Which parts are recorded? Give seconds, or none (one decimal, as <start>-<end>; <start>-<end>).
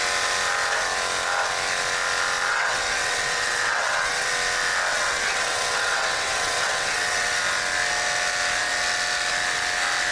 0.0-2.5; 4.3-4.9; 7.4-10.1